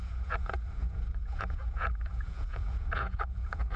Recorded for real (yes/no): no